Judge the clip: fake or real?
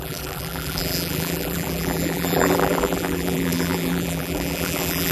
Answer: fake